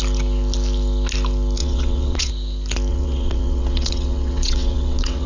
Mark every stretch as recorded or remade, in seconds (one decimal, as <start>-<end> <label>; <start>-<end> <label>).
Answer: 0.0-1.6 recorded; 1.6-2.3 remade; 2.3-2.9 recorded; 2.9-5.3 remade